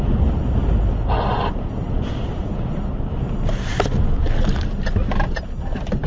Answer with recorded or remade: recorded